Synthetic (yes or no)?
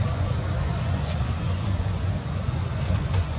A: yes